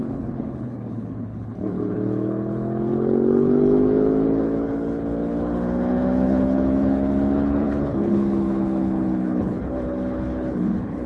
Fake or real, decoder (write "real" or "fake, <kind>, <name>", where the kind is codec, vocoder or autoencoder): fake, codec, HILCodec